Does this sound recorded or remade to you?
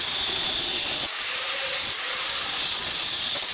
remade